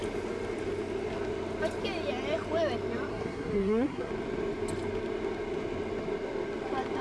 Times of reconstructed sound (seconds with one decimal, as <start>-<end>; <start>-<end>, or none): 3.1-4.1